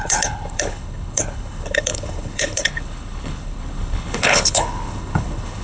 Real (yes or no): no